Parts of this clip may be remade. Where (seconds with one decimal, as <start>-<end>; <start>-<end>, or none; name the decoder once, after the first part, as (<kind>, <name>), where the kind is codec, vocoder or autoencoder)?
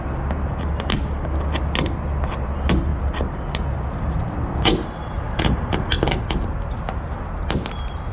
none